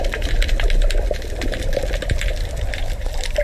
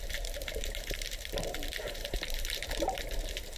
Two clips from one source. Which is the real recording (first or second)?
first